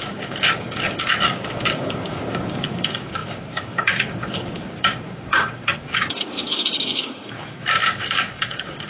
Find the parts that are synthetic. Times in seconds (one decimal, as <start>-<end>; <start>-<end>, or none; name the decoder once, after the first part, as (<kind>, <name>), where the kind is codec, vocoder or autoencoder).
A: 0.0-8.9 (codec, DAC)